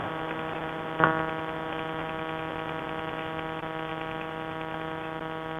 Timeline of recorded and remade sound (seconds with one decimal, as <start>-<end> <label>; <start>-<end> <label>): 0.0-5.6 recorded